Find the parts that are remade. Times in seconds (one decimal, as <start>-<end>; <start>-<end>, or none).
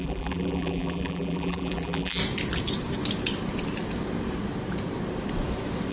0.0-2.2